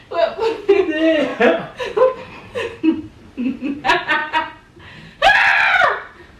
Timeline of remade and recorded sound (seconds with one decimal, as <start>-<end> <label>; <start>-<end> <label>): 0.0-6.4 recorded